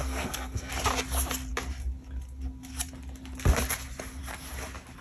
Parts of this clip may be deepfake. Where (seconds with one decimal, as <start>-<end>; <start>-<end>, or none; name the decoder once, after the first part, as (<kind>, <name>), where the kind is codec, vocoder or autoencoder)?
0.0-0.7 (codec, SNAC)